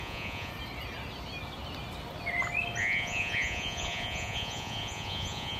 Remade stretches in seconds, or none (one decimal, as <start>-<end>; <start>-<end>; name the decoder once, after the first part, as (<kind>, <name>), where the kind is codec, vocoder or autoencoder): 0.0-0.5 (vocoder, Vocos); 2.8-5.6